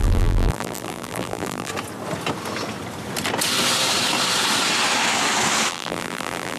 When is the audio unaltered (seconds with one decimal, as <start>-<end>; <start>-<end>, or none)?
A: 1.7-5.7